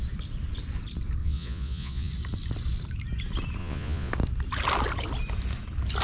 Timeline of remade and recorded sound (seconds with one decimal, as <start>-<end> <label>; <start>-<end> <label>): 0.0-1.2 recorded; 1.2-2.1 remade; 2.1-3.6 recorded; 3.6-4.1 remade; 4.1-6.0 recorded